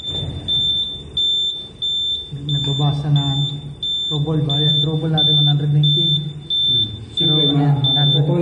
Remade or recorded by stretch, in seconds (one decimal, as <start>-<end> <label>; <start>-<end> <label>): 0.0-8.4 recorded